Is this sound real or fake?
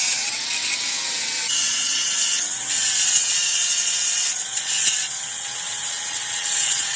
fake